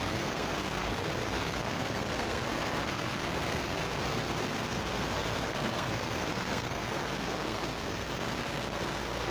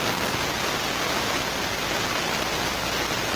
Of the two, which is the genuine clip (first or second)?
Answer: second